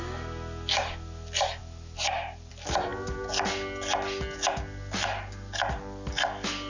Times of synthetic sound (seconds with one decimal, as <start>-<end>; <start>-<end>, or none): none

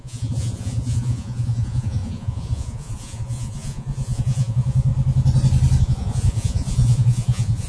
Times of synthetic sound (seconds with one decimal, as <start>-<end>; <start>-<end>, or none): 0.0-4.9; 5.8-7.7

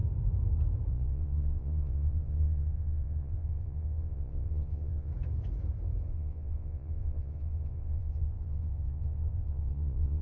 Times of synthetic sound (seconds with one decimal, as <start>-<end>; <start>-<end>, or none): 0.9-5.1; 6.1-10.2

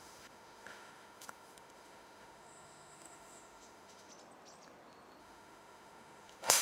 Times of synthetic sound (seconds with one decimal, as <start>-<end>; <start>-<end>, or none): 0.0-4.1; 5.2-6.6

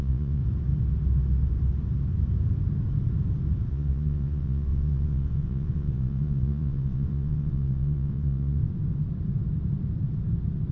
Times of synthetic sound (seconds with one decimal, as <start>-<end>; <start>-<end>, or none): 0.0-0.4; 3.7-8.6

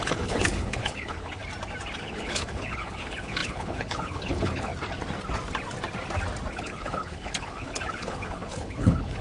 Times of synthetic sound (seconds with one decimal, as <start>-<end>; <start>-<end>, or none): 0.0-1.4; 2.0-4.7; 6.5-9.2

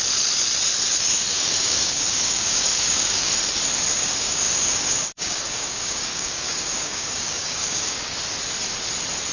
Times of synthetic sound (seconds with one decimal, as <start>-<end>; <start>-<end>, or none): 1.3-3.3; 3.9-8.2